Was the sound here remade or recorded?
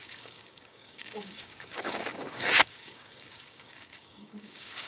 remade